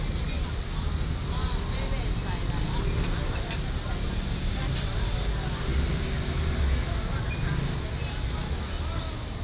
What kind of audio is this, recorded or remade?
recorded